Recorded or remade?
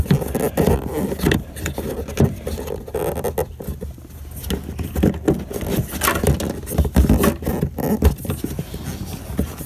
recorded